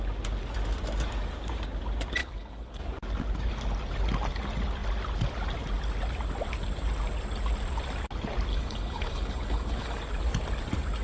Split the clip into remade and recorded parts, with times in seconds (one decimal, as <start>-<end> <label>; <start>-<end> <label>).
0.0-2.2 recorded; 2.2-2.8 remade; 2.8-8.5 recorded; 8.5-10.0 remade; 10.0-11.0 recorded